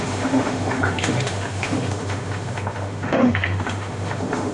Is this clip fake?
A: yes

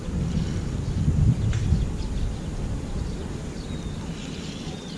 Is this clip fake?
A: no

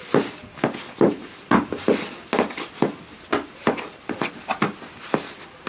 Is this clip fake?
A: no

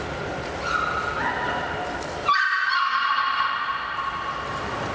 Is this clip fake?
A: no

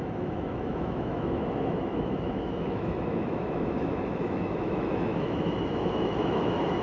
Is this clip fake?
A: yes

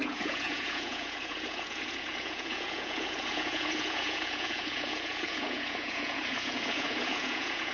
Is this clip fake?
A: yes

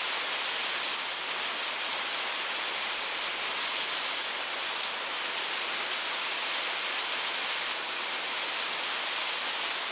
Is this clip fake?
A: no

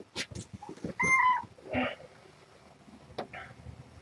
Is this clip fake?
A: no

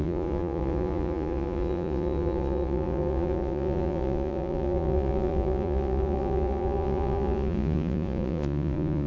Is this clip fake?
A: yes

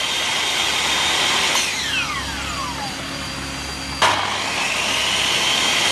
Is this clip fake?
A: no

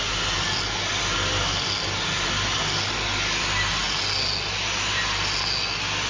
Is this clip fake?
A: no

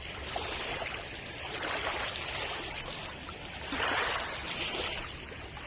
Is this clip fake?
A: no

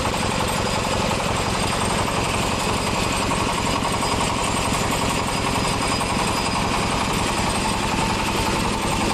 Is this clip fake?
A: no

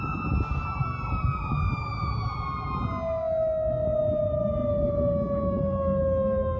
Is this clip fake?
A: no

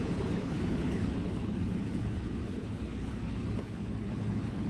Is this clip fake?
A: yes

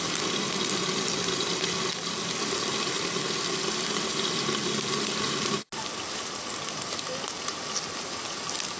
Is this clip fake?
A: no